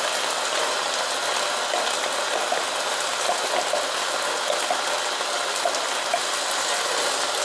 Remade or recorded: recorded